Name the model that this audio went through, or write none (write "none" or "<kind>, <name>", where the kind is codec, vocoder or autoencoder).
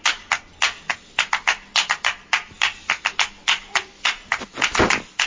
none